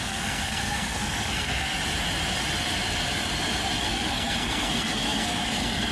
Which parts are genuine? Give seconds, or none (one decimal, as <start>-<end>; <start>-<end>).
1.7-3.8